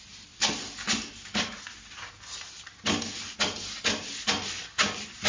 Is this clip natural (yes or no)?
yes